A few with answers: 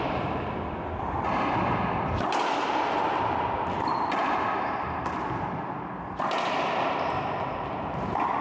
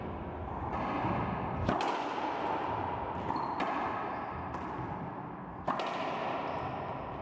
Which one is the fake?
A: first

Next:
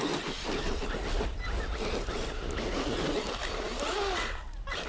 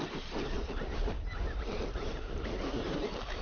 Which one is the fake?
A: second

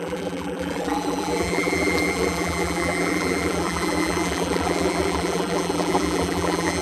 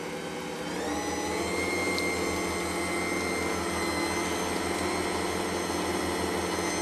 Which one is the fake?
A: first